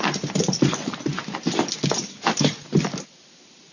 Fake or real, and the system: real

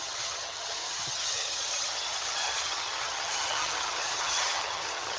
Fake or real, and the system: fake, vocoder, HiFi-GAN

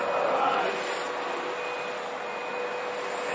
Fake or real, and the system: real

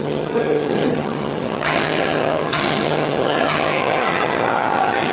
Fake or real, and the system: fake, vocoder, HiFi-GAN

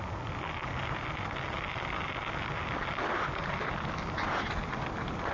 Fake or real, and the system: real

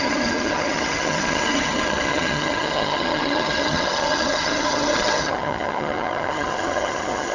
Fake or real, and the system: fake, vocoder, HiFi-GAN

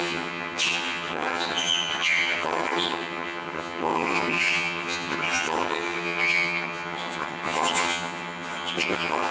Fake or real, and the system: fake, vocoder, HiFi-GAN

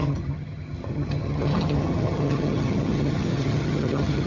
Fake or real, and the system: fake, vocoder, HiFi-GAN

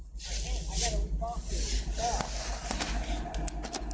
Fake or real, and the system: real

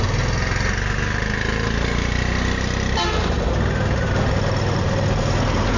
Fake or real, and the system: real